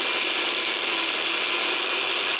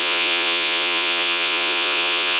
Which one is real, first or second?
first